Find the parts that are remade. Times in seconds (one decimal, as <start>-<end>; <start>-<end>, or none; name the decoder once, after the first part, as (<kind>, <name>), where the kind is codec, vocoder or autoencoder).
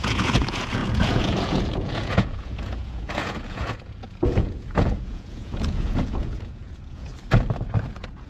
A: 0.0-7.1 (vocoder, Vocos); 7.9-8.3